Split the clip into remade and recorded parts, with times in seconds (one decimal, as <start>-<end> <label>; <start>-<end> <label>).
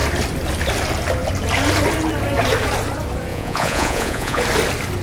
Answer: 0.0-3.3 recorded; 3.3-4.4 remade; 4.4-5.0 recorded